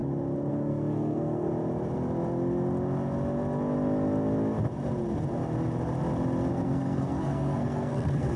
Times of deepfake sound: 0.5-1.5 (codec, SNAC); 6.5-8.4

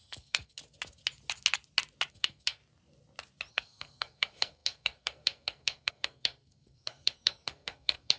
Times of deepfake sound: 0.0-0.6 (codec, SNAC); 2.1-2.6; 3.5-8.2

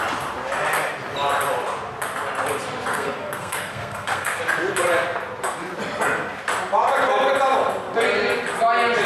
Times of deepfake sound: 2.9-4.4 (codec, SNAC)

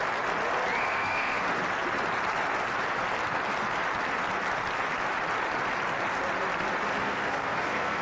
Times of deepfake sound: 0.8-1.4 (codec, SNAC); 7.0-8.0